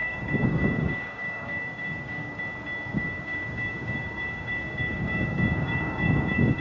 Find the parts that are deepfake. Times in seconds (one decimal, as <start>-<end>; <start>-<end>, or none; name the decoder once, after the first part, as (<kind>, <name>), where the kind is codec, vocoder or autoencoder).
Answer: 0.0-2.4 (codec, DAC); 2.9-6.6